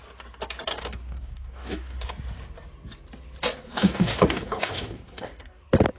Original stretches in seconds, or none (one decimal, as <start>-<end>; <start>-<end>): 0.0-0.7; 2.1-3.7; 5.6-6.0